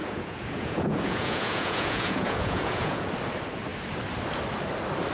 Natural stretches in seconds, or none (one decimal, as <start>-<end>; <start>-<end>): 3.1-5.1